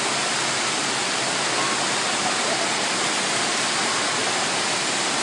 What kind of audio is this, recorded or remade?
recorded